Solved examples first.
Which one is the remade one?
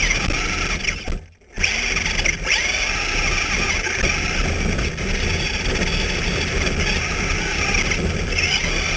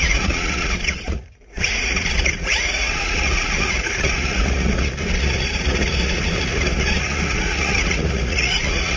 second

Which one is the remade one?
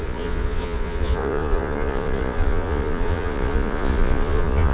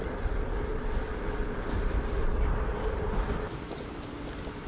first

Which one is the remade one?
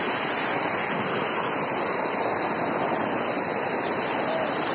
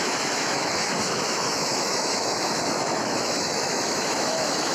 second